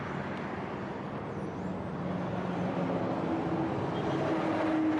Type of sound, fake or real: real